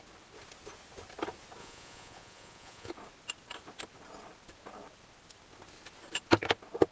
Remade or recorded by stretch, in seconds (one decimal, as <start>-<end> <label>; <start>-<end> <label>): 0.0-1.6 recorded; 1.6-2.9 remade; 2.9-6.9 recorded